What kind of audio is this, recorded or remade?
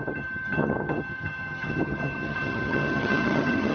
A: remade